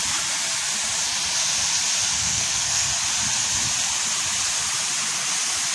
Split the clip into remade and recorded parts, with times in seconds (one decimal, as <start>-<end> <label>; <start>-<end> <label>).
0.0-2.1 recorded; 2.1-2.9 remade; 2.9-5.7 recorded